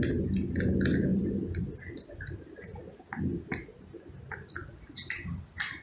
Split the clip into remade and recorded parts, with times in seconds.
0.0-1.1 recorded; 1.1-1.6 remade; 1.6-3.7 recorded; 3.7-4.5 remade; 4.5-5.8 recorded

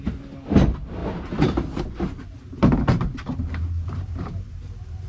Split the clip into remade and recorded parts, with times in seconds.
0.0-1.0 recorded; 1.0-1.8 remade; 1.8-3.4 recorded; 3.4-5.1 remade

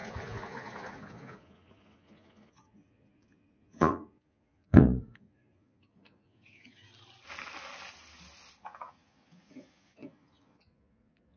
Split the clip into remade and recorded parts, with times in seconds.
0.0-6.9 remade; 6.9-8.6 recorded; 8.6-11.4 remade

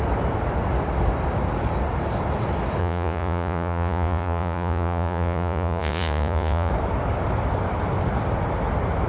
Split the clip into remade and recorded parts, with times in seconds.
0.0-2.8 recorded; 2.8-6.7 remade; 6.7-9.1 recorded

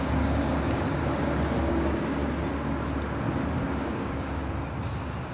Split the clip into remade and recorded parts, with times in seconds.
0.0-1.0 remade; 1.0-1.7 recorded; 1.7-2.2 remade; 2.2-3.8 recorded; 3.8-4.4 remade; 4.4-5.3 recorded

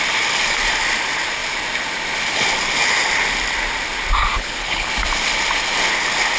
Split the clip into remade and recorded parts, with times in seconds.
0.0-4.3 recorded; 4.3-4.9 remade; 4.9-6.4 recorded